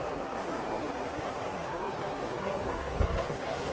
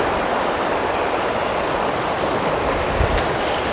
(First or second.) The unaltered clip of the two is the second